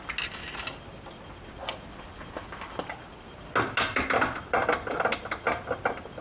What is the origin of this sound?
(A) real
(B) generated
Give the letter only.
A